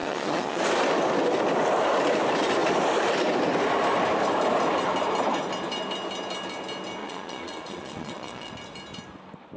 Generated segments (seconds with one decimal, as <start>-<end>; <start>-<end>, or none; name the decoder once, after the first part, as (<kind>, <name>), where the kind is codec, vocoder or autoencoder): 0.0-0.6 (vocoder, Vocos); 7.0-8.5